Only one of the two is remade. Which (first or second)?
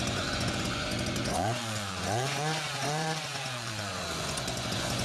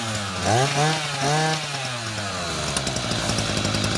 first